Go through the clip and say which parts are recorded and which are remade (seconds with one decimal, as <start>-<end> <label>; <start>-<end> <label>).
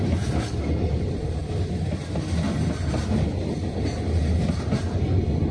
0.0-5.5 recorded